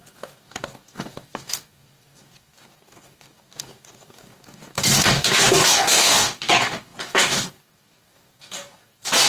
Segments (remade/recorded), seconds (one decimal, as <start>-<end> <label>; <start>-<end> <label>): 0.0-9.3 remade